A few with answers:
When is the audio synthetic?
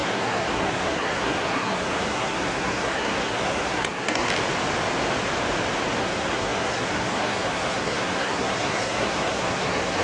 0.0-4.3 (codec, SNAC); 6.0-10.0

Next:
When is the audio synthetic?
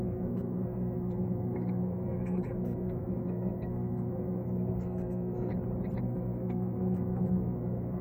0.0-5.5 (codec, SNAC); 6.0-8.0